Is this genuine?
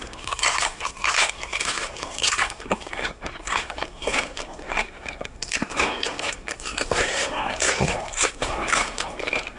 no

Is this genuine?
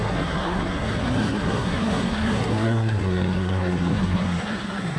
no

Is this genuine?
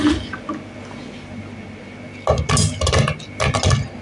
yes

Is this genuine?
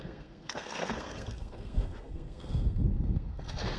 no